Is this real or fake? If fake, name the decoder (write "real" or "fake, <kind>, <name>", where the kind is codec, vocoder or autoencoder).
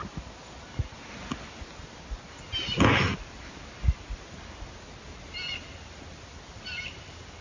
real